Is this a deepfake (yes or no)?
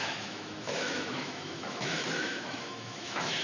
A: yes